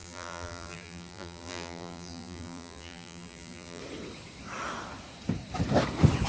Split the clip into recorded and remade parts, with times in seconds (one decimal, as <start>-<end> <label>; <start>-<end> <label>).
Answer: 0.0-3.8 remade; 3.8-6.3 recorded